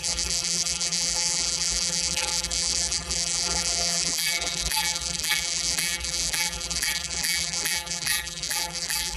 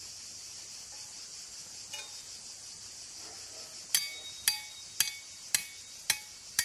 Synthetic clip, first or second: first